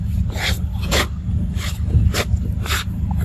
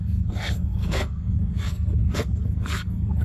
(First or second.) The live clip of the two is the first